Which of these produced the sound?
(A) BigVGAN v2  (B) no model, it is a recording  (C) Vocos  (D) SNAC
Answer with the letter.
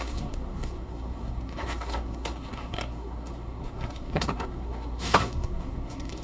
D